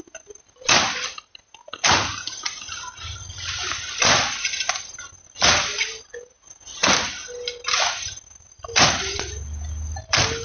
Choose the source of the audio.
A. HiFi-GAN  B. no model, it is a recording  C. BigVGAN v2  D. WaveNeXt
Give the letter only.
B